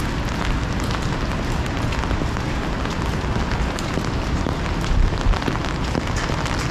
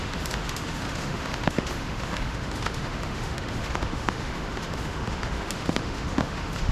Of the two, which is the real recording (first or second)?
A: first